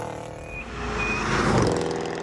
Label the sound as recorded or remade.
recorded